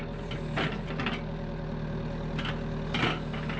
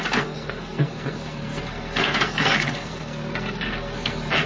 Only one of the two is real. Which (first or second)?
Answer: first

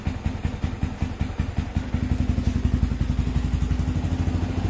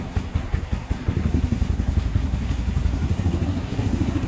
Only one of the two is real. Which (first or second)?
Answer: first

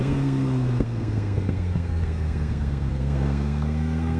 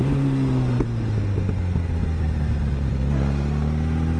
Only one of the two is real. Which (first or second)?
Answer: second